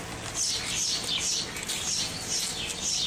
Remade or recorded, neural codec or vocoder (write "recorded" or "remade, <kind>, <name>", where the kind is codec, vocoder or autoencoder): recorded